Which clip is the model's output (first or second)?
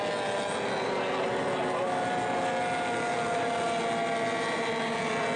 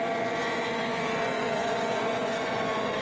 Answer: second